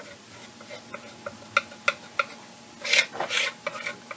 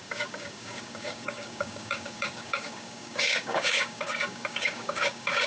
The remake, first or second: second